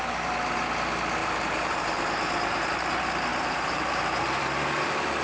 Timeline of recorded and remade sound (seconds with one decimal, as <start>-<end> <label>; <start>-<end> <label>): 0.0-1.2 recorded; 1.2-2.9 remade; 2.9-3.3 recorded; 3.3-4.4 remade; 4.4-5.2 recorded